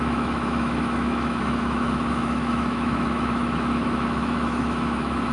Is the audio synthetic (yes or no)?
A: yes